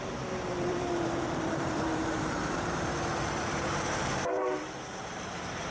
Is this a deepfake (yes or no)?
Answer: yes